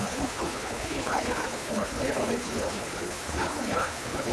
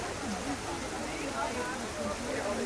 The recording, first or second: second